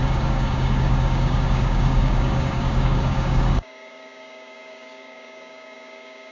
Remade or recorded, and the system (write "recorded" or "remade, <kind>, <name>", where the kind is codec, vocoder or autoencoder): remade, codec, DAC